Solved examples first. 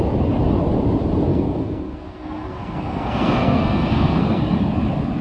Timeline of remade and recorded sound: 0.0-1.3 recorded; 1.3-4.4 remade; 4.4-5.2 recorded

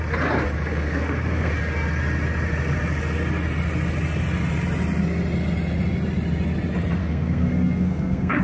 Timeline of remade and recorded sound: 0.0-0.7 recorded; 0.7-1.5 remade; 1.5-7.0 recorded; 7.0-8.4 remade

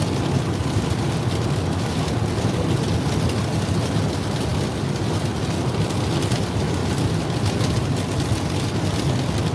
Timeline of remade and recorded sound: 0.0-9.5 recorded

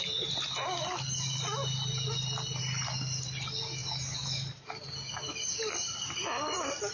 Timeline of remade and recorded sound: 0.0-6.9 recorded